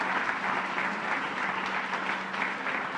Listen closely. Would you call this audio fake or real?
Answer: real